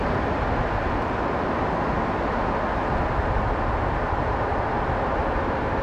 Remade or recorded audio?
recorded